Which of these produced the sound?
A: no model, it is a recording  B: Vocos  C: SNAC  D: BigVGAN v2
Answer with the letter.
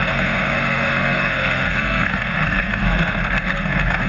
C